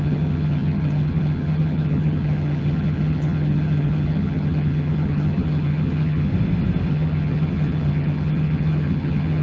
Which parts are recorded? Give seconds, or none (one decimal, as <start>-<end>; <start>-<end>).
6.3-6.9